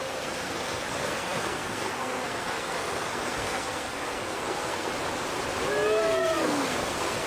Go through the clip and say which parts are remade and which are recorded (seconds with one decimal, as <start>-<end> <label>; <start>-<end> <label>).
0.0-4.9 remade; 4.9-6.0 recorded; 6.0-7.3 remade